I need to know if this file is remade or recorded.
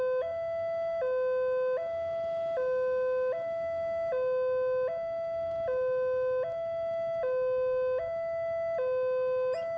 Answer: recorded